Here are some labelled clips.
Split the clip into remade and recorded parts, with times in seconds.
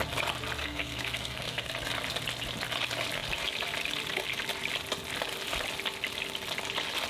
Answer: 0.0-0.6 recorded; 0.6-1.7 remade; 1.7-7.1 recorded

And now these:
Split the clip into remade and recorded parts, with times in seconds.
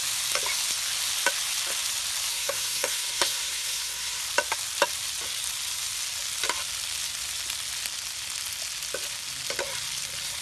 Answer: 0.0-2.3 recorded; 2.3-4.2 remade; 4.2-10.4 recorded